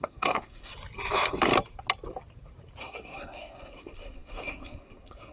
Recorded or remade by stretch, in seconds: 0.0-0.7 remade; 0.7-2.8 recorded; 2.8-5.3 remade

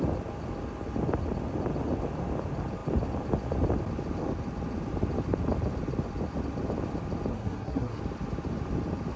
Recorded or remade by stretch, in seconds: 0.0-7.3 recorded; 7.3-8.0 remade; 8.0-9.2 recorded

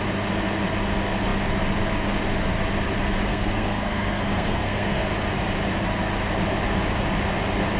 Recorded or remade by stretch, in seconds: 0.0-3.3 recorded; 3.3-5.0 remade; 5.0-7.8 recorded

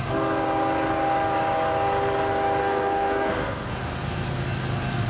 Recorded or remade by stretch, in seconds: 0.0-2.6 recorded; 2.6-3.7 remade; 3.7-5.1 recorded

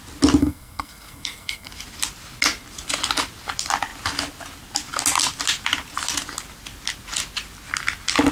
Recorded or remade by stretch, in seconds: 0.0-0.4 recorded; 0.4-1.7 remade; 1.7-8.3 recorded